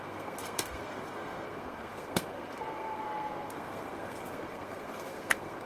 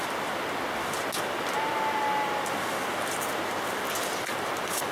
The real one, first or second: second